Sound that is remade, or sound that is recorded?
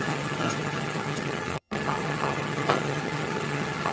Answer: remade